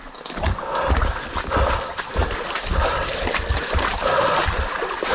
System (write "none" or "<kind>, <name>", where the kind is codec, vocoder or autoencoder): none